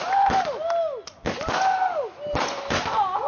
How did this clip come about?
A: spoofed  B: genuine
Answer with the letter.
B